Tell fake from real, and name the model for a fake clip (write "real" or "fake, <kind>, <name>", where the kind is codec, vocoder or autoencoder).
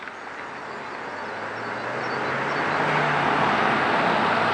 real